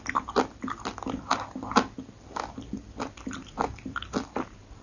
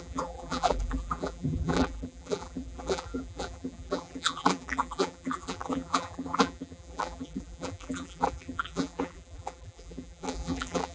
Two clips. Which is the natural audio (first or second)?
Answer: first